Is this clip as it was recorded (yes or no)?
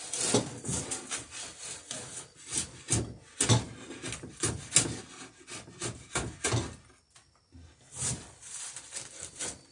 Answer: yes